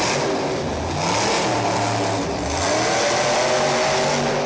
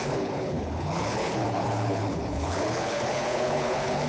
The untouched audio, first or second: first